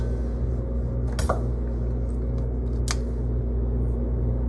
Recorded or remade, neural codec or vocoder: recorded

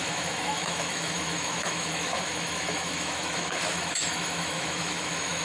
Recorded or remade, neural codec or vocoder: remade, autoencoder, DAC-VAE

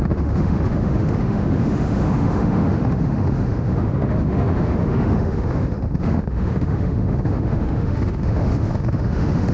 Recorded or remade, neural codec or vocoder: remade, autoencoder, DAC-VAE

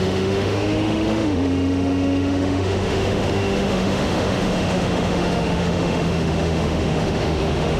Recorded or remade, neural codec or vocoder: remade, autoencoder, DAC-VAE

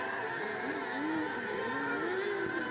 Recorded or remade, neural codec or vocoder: recorded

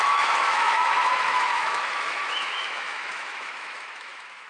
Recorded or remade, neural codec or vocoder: remade, autoencoder, DAC-VAE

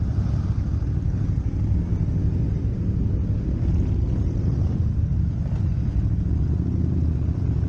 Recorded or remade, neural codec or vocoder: recorded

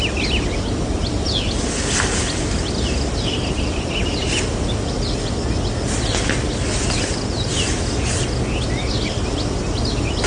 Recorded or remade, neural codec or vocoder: recorded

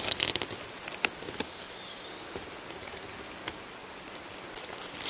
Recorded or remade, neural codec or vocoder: recorded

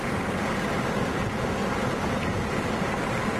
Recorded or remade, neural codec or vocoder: recorded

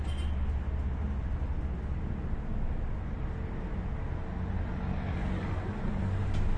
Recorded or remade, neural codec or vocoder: recorded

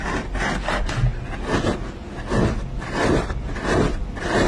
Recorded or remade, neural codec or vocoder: recorded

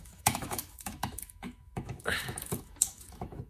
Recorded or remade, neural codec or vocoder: remade, autoencoder, DAC-VAE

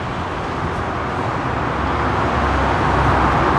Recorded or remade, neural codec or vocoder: recorded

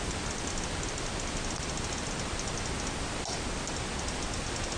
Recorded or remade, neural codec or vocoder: recorded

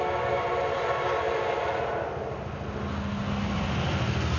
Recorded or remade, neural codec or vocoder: recorded